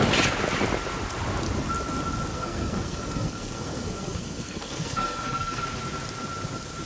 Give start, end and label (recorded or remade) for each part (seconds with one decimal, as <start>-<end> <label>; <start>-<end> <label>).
0.0-2.3 recorded; 2.3-5.6 remade; 5.6-6.9 recorded